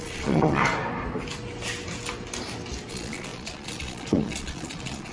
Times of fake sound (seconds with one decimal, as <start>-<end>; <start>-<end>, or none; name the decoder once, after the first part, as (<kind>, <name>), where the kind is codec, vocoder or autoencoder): 0.0-0.6 (vocoder, Vocos); 2.9-5.1